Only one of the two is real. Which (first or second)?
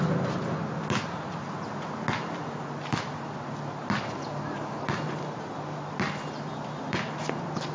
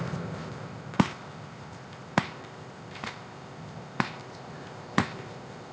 first